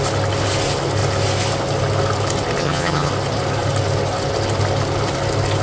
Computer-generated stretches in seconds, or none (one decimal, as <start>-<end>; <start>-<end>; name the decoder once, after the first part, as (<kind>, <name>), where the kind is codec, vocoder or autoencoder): 2.6-3.1 (vocoder, HiFi-GAN)